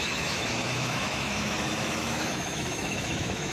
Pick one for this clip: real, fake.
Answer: fake